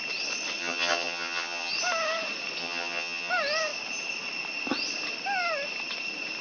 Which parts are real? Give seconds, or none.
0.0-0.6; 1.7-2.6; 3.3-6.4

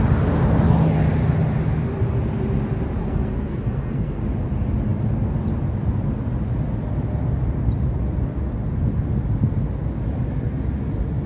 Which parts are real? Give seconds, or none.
0.0-3.0; 4.2-11.3

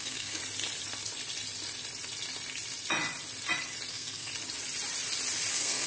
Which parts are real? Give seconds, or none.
0.4-3.9; 4.3-5.5

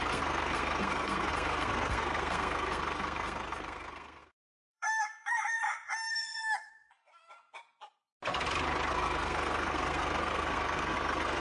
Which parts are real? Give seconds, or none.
5.6-6.1; 7.1-8.9

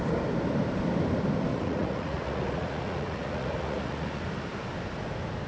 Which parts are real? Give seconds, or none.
0.0-1.5; 4.2-5.5

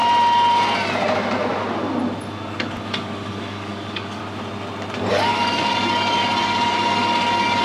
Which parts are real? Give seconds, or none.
0.0-2.8; 4.2-5.1

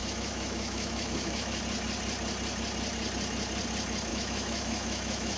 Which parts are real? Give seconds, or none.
1.6-4.1